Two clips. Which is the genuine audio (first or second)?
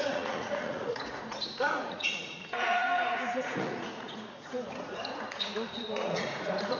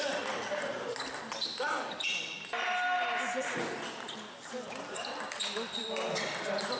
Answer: second